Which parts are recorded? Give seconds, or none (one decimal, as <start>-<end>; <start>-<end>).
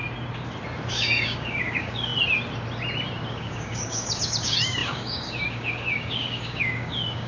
0.0-0.9; 2.1-3.3